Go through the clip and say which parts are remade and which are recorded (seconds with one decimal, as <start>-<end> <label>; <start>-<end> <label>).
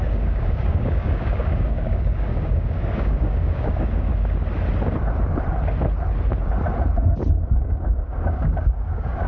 0.0-4.1 remade; 4.1-7.5 recorded; 7.5-9.3 remade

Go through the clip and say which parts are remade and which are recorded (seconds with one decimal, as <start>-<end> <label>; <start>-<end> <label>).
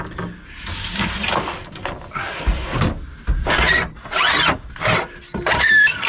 0.0-6.1 recorded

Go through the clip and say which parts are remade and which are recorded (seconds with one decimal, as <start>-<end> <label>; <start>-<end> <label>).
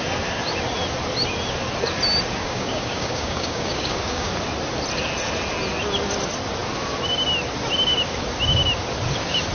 0.0-2.4 recorded; 2.4-4.3 remade; 4.3-9.5 recorded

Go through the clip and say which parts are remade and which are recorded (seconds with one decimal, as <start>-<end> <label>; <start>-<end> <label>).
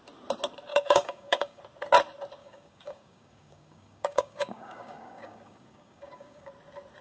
0.0-0.7 recorded; 0.7-1.6 remade; 1.6-2.4 recorded; 2.4-6.5 remade; 6.5-7.0 recorded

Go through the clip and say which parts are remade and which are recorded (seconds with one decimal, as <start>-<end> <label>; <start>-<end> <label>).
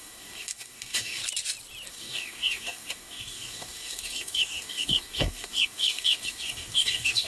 0.0-1.2 remade; 1.2-1.9 recorded; 1.9-7.3 remade